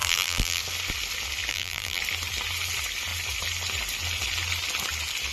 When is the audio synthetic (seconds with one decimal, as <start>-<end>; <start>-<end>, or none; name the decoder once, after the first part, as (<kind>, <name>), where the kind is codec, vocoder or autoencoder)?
0.0-0.6 (vocoder, BigVGAN v2); 1.5-2.0